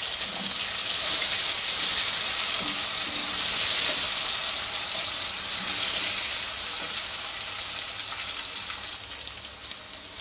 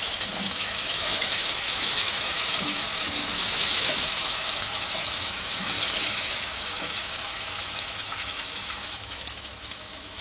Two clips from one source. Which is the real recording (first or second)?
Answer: first